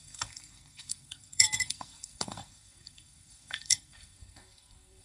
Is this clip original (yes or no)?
no